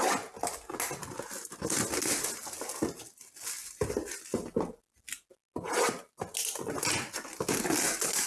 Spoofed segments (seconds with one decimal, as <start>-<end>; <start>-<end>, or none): none